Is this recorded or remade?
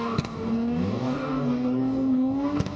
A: remade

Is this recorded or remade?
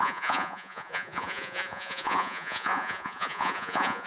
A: remade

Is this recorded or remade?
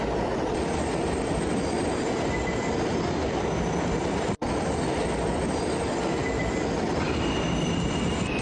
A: recorded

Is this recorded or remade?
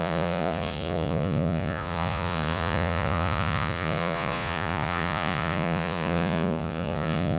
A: remade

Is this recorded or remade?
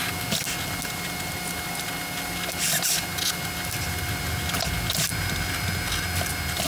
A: recorded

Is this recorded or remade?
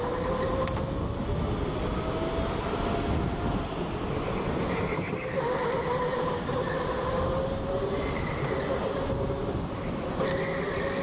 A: recorded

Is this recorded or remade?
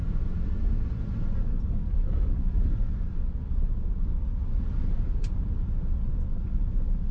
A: recorded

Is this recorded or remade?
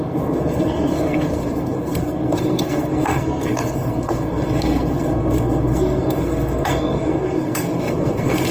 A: remade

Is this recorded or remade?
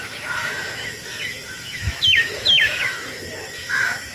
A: remade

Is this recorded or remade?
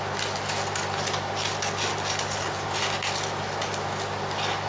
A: recorded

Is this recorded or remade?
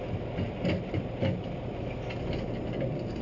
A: recorded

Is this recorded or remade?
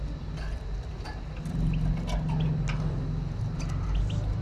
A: recorded